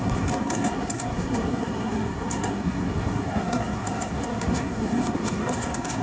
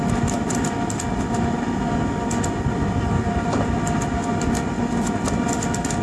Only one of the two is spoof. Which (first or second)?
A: first